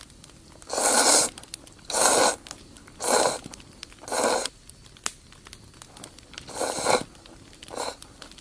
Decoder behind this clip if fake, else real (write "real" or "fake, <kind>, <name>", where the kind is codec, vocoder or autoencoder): real